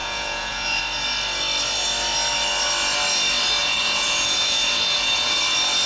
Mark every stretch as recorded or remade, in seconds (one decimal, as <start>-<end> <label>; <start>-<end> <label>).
0.0-0.8 remade; 0.8-3.6 recorded; 3.6-5.4 remade; 5.4-5.9 recorded